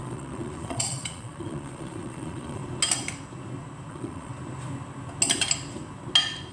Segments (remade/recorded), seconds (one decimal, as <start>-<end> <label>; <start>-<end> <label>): 0.0-2.6 remade; 2.6-3.9 recorded; 3.9-4.3 remade; 4.3-6.5 recorded